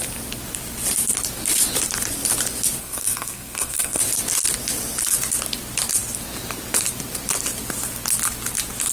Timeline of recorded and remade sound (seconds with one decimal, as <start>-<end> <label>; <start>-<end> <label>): 0.0-2.8 recorded; 2.8-4.0 remade; 4.0-8.9 recorded